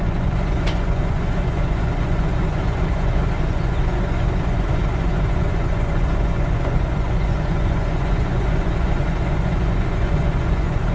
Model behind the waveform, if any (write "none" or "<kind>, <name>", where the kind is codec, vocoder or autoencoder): vocoder, Vocos